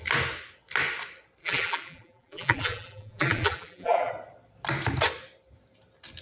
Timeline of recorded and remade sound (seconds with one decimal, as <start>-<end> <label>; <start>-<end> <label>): 0.0-1.4 recorded; 1.4-4.1 remade; 4.1-6.2 recorded